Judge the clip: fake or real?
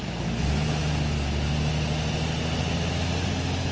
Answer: real